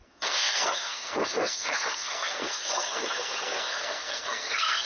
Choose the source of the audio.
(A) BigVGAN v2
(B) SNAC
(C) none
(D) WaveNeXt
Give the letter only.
B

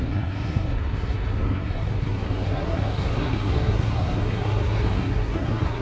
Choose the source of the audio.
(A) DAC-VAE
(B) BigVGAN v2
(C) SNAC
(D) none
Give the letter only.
C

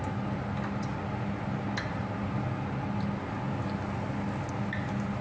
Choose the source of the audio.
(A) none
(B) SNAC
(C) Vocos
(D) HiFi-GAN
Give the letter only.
A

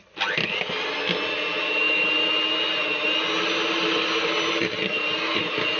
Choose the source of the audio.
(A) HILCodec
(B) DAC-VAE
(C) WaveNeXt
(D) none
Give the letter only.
D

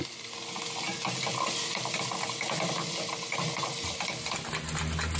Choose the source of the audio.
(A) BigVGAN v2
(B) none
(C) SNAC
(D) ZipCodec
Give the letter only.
B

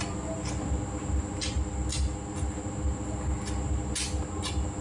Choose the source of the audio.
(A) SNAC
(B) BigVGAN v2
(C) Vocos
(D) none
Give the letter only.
D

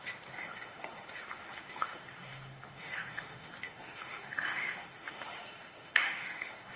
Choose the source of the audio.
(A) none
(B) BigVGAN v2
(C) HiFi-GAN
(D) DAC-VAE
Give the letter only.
D